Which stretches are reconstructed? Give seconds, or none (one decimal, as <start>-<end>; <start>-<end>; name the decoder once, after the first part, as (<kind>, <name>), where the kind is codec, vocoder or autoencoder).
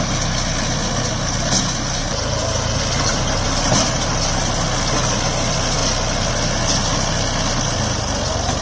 2.0-2.8 (vocoder, BigVGAN v2)